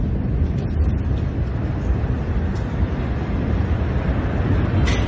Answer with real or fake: real